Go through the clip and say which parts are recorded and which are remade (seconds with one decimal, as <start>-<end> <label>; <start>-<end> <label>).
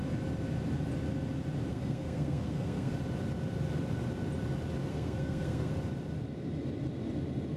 0.0-1.7 recorded; 1.7-2.9 remade; 2.9-4.9 recorded; 4.9-5.7 remade; 5.7-7.6 recorded